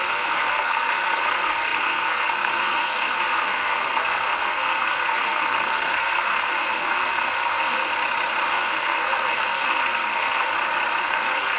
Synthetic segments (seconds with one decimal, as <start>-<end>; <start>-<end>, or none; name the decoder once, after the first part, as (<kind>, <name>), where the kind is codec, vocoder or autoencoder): 0.0-7.9 (codec, SNAC); 8.5-10.5; 11.0-11.6